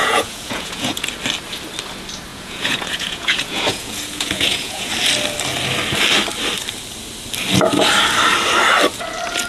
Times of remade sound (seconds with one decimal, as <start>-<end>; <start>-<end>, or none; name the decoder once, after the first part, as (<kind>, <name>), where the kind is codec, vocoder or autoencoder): 0.0-1.1 (vocoder, Vocos); 2.3-4.9